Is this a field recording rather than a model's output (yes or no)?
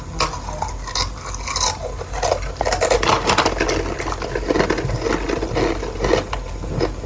yes